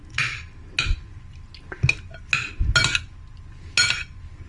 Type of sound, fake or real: real